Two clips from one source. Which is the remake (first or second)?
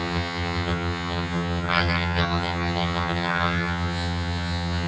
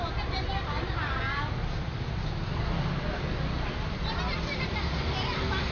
first